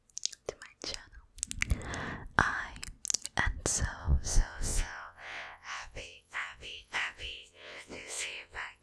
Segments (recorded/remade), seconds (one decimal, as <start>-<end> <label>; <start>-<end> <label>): 0.0-4.0 recorded; 4.0-8.8 remade